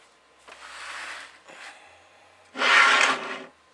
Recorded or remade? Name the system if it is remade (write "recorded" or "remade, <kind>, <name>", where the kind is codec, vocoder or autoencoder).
recorded